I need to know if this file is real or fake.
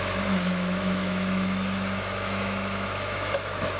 fake